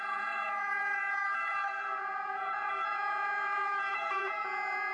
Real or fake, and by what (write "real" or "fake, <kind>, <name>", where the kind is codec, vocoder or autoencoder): fake, vocoder, Vocos